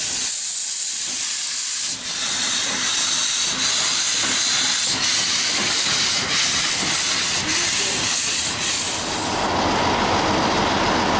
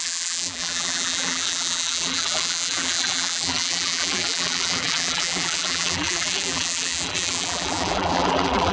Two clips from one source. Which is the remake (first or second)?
second